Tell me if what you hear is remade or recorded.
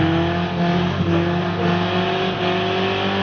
recorded